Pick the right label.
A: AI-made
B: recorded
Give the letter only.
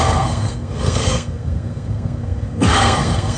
A